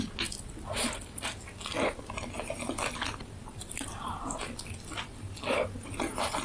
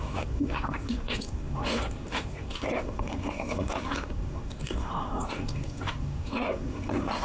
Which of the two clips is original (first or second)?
first